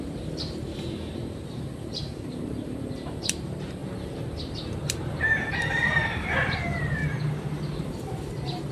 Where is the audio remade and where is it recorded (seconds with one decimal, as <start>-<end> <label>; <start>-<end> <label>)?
0.0-3.8 remade; 3.8-5.0 recorded; 5.0-7.0 remade; 7.0-7.8 recorded; 7.8-8.7 remade